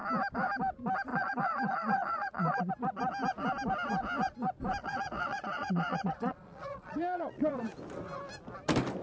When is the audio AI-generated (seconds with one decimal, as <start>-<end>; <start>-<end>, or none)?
1.1-2.7; 4.8-7.6